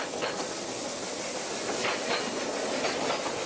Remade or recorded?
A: recorded